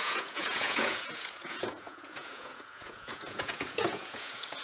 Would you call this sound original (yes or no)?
no